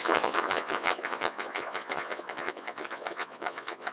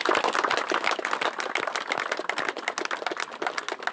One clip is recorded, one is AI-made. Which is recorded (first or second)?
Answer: second